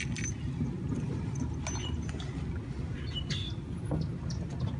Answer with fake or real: real